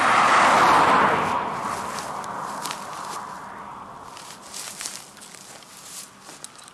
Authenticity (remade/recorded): recorded